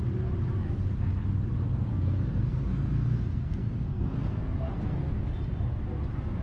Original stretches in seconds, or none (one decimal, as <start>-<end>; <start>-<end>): 0.0-1.6; 5.1-6.4